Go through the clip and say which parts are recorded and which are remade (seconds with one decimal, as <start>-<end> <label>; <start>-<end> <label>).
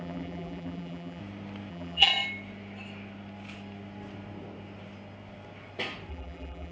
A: 0.0-1.2 remade; 1.2-1.7 recorded; 1.7-2.1 remade; 2.1-6.1 recorded; 6.1-6.7 remade